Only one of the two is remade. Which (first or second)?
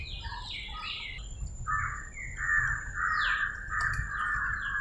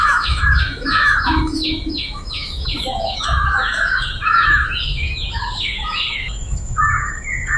second